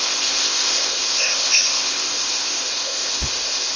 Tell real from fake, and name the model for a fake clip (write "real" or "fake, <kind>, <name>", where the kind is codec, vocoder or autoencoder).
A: fake, codec, ZipCodec